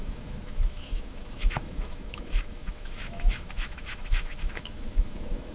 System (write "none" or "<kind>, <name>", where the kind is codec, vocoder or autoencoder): autoencoder, DAC-VAE